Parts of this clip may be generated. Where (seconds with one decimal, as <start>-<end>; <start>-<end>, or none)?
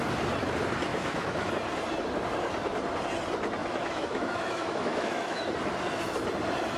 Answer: 0.9-1.5; 3.6-5.4